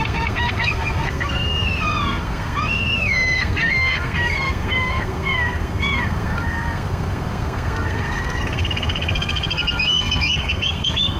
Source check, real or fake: fake